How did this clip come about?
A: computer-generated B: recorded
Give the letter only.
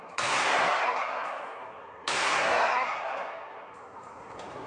A